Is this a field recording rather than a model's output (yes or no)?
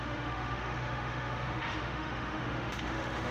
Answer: no